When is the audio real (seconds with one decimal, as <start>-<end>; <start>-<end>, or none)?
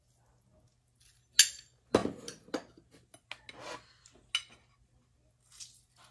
0.0-6.1